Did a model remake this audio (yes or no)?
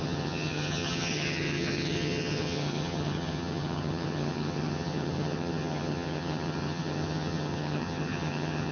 yes